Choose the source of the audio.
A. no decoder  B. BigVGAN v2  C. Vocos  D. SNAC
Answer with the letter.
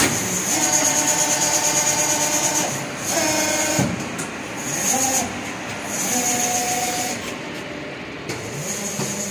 A